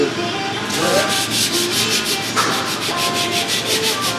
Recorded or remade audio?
recorded